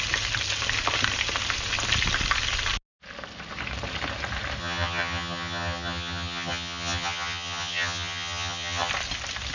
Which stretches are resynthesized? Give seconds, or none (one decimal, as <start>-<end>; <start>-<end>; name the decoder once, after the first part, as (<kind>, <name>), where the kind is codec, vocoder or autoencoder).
4.6-8.9 (vocoder, HiFi-GAN)